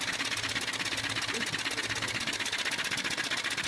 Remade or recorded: recorded